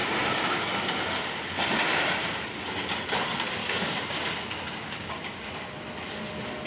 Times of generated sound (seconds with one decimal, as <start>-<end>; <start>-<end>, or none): 0.0-1.0; 3.6-5.5

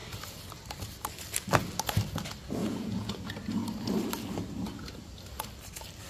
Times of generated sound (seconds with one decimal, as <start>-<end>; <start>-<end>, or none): 2.6-3.2

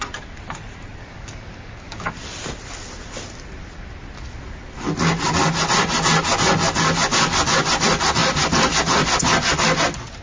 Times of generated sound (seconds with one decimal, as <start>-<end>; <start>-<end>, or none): 1.0-2.1

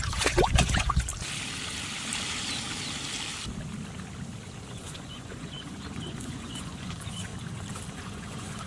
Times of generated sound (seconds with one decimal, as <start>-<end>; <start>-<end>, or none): 0.0-1.1; 4.7-7.3; 7.9-8.7

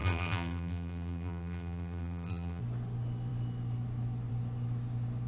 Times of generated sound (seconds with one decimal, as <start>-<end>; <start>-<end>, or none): 0.0-2.6

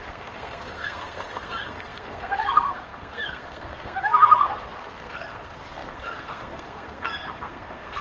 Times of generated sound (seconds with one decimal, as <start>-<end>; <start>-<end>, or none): 0.0-8.0